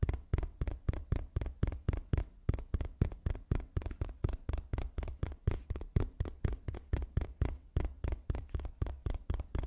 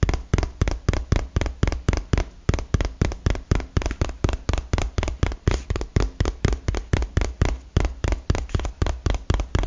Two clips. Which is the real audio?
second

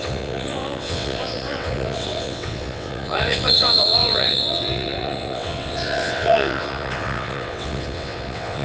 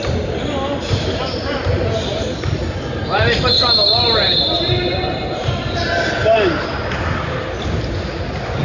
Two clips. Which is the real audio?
second